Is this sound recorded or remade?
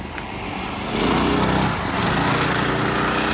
recorded